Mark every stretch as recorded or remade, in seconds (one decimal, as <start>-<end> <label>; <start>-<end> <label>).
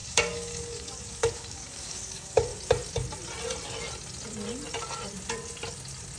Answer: 0.0-2.5 remade; 2.5-6.2 recorded